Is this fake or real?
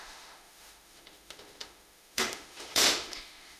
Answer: fake